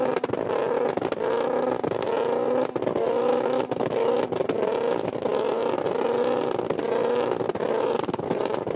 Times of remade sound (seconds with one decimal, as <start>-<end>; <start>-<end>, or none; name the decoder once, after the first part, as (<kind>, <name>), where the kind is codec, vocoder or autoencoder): 3.3-4.1 (autoencoder, DAC-VAE)